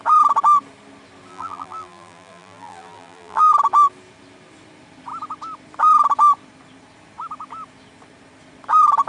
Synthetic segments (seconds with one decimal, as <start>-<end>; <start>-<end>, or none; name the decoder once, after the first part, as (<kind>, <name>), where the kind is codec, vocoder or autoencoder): 1.3-3.5 (vocoder, BigVGAN v2)